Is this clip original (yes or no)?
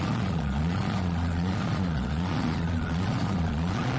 no